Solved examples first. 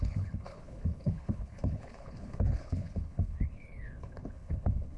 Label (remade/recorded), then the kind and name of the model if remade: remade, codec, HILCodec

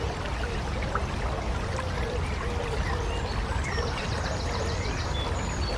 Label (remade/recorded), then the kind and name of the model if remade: recorded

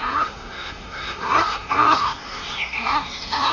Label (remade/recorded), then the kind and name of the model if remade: remade, codec, SNAC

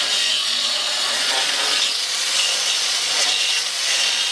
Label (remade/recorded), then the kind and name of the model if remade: remade, vocoder, Vocos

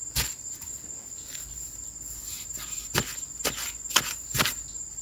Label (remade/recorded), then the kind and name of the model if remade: recorded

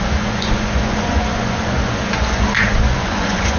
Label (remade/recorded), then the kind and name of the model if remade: remade, vocoder, Vocos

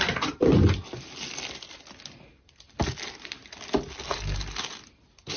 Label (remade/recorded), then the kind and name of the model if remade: recorded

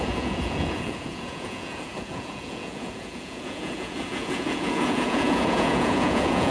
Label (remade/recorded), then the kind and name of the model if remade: remade, vocoder, Vocos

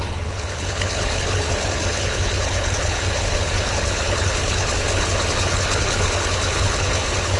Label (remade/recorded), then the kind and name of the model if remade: remade, codec, HILCodec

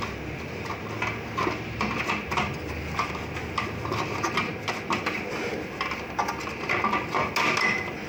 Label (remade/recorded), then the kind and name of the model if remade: recorded